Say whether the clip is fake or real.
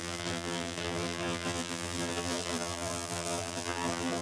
fake